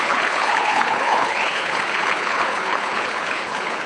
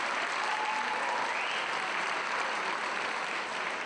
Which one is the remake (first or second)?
first